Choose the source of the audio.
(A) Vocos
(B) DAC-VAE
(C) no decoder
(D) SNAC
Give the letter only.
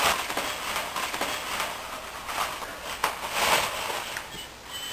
C